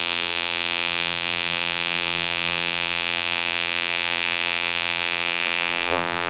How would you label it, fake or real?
fake